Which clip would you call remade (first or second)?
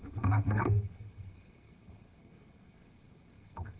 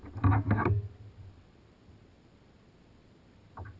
first